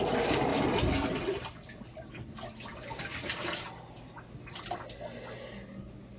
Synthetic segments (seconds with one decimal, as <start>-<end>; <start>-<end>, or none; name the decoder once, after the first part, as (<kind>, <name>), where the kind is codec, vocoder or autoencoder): 3.1-4.1 (vocoder, BigVGAN v2)